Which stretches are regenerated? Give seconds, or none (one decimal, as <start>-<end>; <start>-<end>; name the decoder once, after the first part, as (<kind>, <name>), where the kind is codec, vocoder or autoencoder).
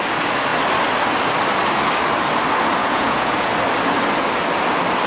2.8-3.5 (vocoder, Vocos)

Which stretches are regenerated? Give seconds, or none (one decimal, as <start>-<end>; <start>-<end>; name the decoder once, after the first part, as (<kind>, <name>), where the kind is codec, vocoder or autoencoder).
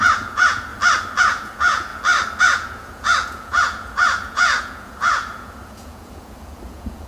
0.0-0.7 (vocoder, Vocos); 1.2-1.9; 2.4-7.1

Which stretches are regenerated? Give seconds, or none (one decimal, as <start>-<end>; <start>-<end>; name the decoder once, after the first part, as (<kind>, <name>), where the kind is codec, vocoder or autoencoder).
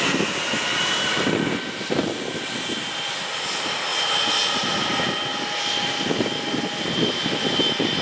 none